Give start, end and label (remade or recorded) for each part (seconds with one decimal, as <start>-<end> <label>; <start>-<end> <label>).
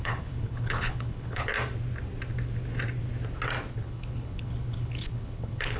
0.0-1.5 remade; 1.5-3.7 recorded; 3.7-5.8 remade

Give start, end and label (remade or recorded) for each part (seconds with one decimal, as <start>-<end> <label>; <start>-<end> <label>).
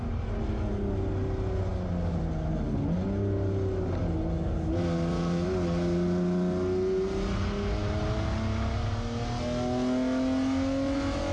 0.0-11.3 recorded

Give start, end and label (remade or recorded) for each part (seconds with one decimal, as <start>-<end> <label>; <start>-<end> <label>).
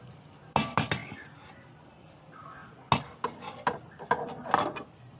0.0-5.2 recorded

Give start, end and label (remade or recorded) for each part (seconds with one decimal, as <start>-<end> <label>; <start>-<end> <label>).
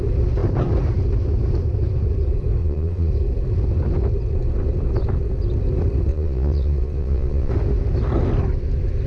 0.0-2.6 recorded; 2.6-3.1 remade; 3.1-6.1 recorded; 6.1-7.5 remade; 7.5-9.1 recorded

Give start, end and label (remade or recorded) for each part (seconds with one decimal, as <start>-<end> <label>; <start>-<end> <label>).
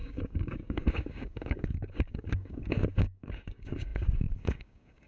0.0-5.1 remade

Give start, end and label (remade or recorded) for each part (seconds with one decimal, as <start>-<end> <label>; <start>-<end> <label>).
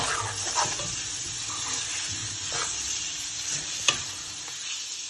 0.0-2.2 recorded; 2.2-4.1 remade; 4.1-5.1 recorded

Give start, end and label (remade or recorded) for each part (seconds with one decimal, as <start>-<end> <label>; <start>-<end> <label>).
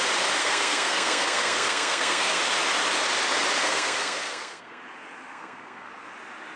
0.0-0.4 recorded; 0.4-2.4 remade; 2.4-3.6 recorded; 3.6-4.8 remade; 4.8-5.3 recorded; 5.3-5.9 remade; 5.9-6.6 recorded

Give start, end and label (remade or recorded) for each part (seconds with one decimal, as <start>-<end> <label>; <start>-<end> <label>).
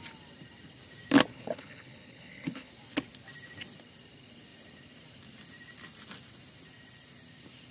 0.0-1.3 recorded; 1.3-2.7 remade; 2.7-7.7 recorded